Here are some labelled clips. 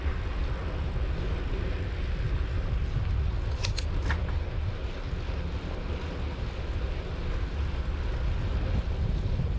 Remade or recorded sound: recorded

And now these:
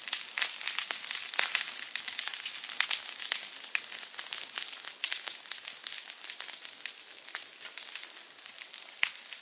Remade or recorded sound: recorded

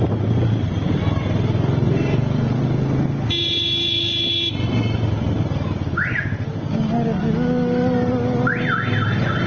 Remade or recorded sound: recorded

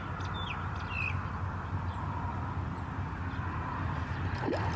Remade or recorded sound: recorded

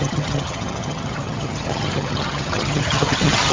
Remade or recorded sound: remade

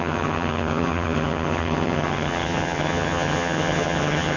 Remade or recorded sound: remade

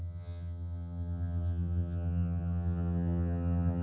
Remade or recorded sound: remade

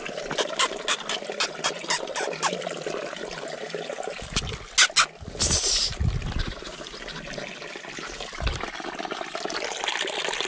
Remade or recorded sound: recorded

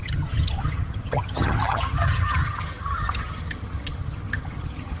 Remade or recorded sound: remade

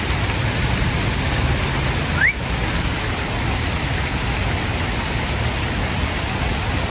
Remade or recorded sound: recorded